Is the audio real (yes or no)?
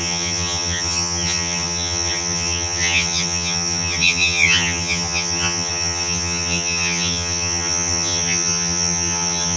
no